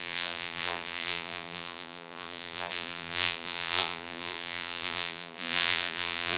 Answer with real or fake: fake